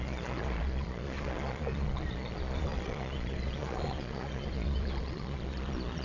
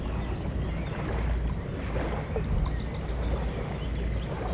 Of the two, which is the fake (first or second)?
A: first